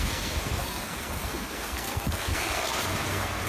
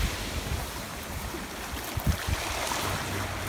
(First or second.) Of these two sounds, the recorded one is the second